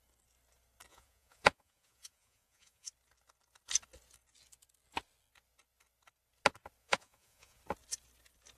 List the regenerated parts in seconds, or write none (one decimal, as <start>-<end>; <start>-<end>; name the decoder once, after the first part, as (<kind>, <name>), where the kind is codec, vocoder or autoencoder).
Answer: 0.9-2.9 (vocoder, Vocos); 6.8-7.6